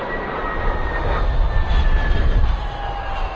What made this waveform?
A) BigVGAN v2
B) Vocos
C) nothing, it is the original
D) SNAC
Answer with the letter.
C